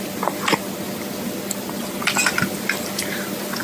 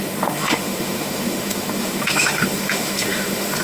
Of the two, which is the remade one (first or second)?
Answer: second